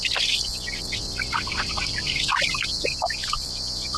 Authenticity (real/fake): real